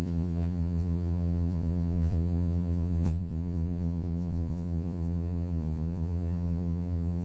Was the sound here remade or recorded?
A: remade